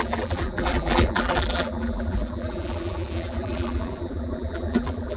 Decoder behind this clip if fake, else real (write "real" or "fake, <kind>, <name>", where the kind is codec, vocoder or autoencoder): fake, vocoder, BigVGAN v2